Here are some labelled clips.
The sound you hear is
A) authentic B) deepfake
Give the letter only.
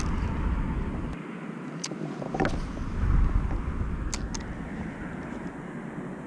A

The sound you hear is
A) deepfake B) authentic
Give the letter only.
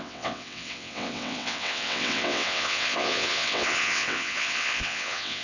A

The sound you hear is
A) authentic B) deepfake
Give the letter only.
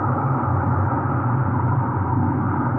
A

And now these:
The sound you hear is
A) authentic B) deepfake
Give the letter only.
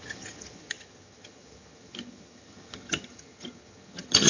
B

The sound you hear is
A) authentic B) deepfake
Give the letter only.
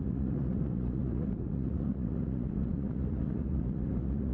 B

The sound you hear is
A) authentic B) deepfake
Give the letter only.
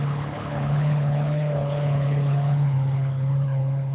B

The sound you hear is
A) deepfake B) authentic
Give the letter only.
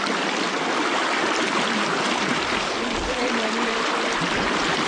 B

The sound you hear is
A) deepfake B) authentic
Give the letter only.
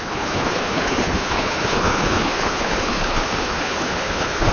A